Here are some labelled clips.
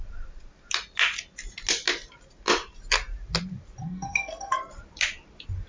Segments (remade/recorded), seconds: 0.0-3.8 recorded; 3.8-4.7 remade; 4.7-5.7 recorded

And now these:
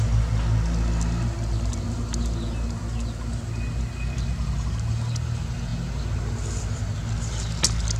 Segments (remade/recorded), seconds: 0.0-8.0 recorded

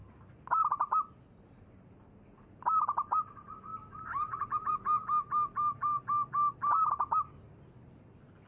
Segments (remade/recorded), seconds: 0.0-8.5 recorded